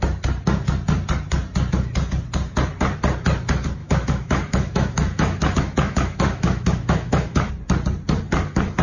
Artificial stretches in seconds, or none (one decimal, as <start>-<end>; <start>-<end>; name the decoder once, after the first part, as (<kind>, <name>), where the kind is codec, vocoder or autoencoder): 3.8-7.5 (autoencoder, DAC-VAE)